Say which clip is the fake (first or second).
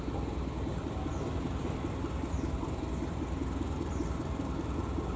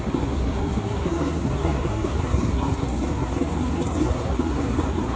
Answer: second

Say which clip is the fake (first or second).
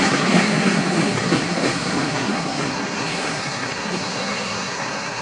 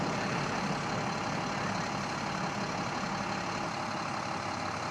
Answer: first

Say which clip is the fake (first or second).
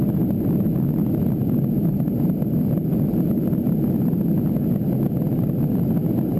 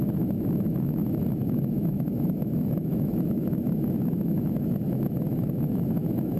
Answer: second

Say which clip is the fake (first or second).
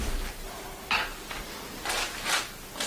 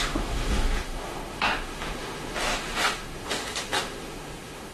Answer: second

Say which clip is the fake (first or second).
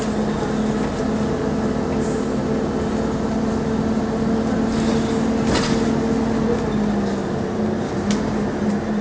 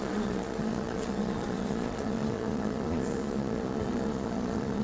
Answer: second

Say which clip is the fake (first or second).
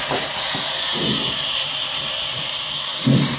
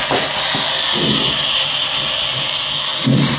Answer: first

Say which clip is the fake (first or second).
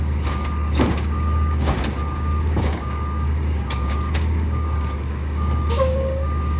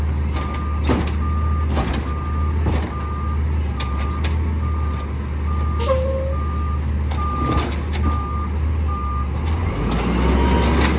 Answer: first